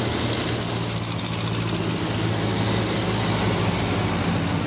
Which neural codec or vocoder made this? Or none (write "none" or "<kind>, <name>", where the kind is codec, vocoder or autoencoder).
none